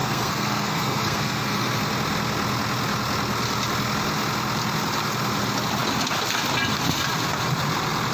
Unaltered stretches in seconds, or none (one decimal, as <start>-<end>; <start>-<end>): 1.8-8.1